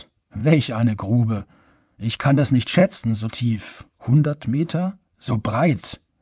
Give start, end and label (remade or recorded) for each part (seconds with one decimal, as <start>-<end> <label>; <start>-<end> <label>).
0.0-6.2 remade